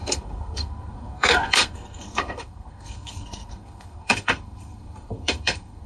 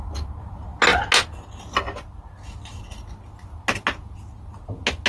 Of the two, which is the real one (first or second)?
second